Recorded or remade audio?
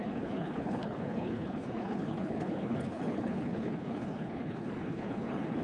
remade